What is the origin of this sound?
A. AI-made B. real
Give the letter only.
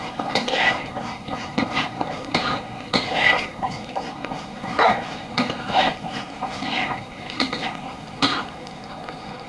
A